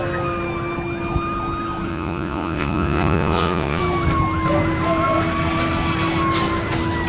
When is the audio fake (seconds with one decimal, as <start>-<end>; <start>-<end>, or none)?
1.9-3.8